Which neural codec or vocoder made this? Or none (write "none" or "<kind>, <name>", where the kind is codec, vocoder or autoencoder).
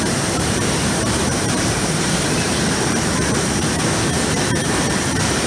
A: vocoder, BigVGAN v2